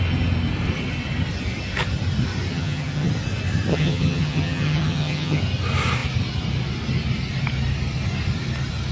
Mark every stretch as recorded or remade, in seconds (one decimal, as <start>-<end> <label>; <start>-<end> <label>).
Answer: 0.0-2.5 recorded; 2.5-3.1 remade; 3.1-3.7 recorded; 3.7-5.4 remade; 5.4-8.9 recorded